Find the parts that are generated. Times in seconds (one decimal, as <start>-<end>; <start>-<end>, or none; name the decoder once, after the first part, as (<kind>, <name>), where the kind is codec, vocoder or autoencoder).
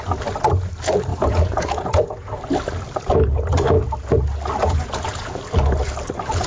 1.1-2.4 (vocoder, Vocos); 4.6-5.4